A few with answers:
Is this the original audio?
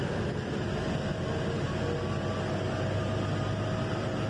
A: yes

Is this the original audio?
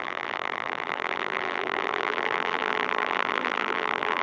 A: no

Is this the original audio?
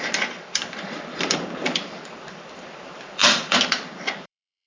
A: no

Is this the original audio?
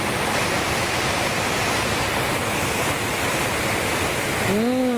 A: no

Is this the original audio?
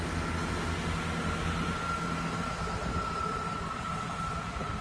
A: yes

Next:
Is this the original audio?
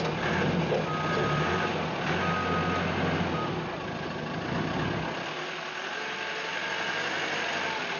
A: yes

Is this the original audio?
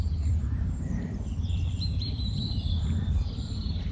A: no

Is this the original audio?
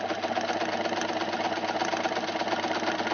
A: yes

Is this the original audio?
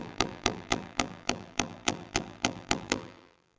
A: no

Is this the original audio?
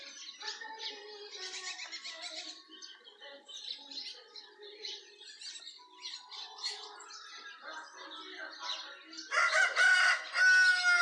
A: yes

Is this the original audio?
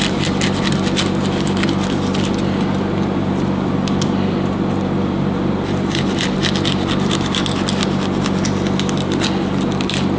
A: yes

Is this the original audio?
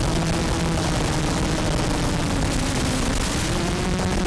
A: yes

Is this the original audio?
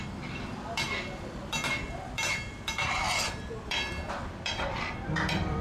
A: no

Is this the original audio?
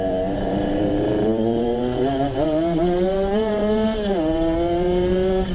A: no